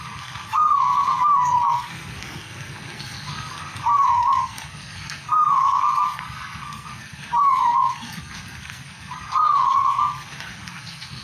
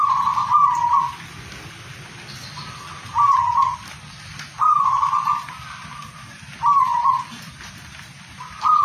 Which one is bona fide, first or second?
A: second